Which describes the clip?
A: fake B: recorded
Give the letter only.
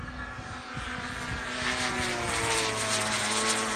B